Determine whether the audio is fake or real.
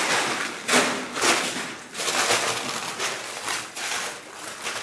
real